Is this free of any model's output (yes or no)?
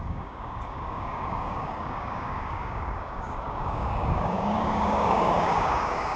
no